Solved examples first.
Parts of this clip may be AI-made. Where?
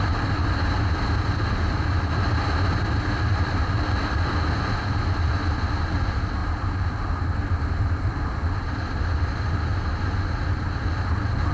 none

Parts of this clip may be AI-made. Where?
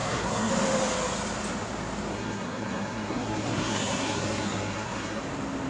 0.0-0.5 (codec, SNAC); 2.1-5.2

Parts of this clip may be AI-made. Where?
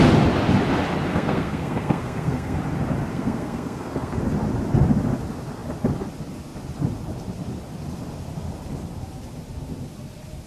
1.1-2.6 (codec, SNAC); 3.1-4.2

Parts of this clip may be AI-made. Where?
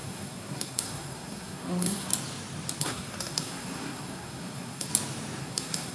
0.0-2.1 (codec, SNAC); 2.8-4.9; 5.4-5.9